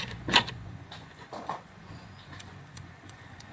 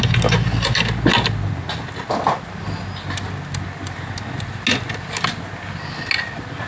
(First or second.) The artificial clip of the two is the first